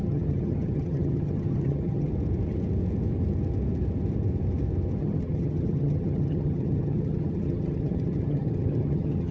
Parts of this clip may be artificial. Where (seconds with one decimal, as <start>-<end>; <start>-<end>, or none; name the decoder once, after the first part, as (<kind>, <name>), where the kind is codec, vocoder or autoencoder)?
0.0-2.1 (vocoder, HiFi-GAN); 5.0-9.3